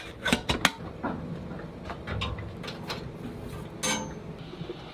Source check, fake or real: real